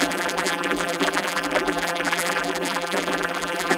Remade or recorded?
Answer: remade